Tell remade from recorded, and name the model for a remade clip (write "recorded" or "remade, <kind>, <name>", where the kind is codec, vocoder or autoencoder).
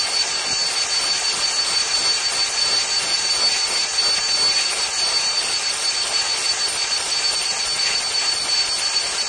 recorded